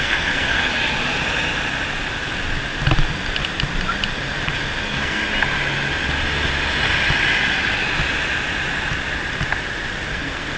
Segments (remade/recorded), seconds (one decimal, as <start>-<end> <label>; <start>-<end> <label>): 0.0-0.7 remade; 0.7-4.8 recorded; 4.8-5.2 remade; 5.2-10.1 recorded; 10.1-10.6 remade